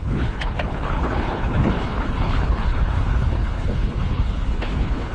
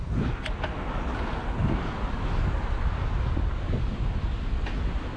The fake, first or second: first